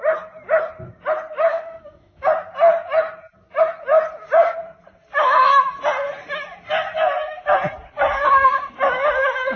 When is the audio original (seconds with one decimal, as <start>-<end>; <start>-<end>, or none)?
0.0-1.5; 2.3-9.6